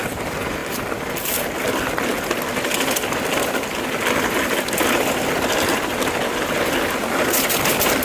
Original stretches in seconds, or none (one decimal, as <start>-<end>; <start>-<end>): 0.0-8.0